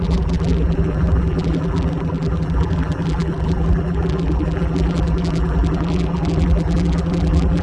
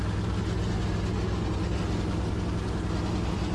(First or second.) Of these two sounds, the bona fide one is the second